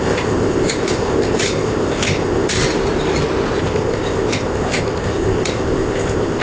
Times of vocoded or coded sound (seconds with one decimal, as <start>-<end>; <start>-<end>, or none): 0.0-2.6; 3.6-6.4